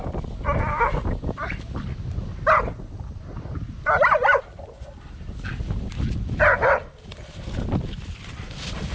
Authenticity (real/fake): real